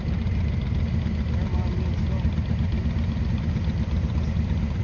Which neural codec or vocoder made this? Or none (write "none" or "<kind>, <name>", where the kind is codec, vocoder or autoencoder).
none